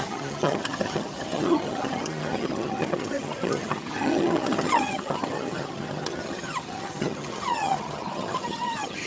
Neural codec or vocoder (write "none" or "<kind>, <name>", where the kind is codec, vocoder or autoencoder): vocoder, HiFi-GAN